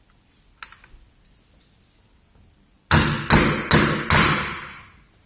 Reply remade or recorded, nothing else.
recorded